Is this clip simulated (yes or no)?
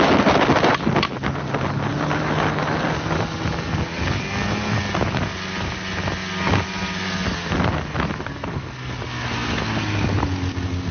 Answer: no